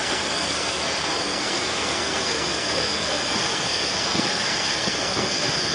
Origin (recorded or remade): remade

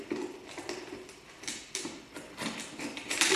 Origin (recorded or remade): recorded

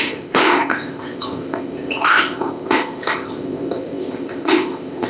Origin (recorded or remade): remade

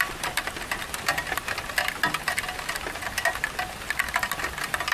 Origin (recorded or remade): recorded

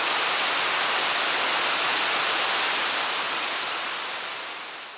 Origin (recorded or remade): recorded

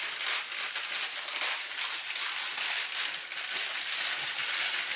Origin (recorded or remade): recorded